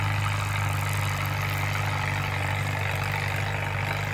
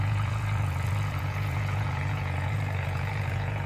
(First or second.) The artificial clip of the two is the second